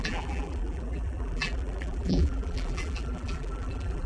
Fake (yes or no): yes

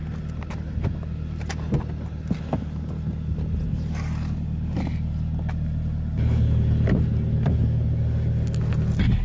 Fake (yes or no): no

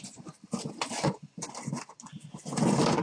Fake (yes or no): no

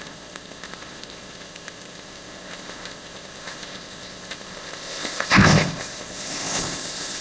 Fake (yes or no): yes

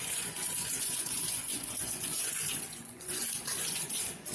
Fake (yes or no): yes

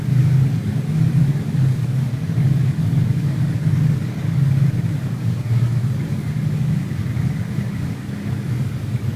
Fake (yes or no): yes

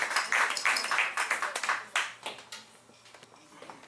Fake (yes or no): no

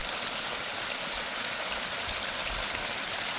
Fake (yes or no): no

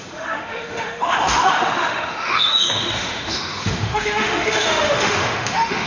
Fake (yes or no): yes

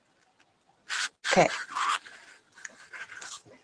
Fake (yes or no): no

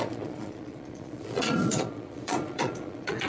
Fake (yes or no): yes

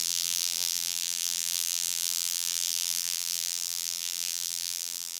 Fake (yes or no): yes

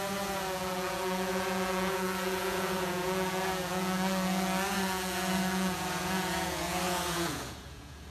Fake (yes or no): yes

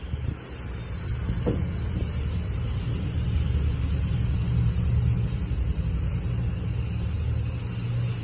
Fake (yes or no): no